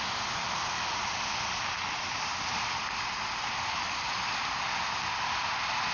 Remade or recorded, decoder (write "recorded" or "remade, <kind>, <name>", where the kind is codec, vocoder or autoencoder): recorded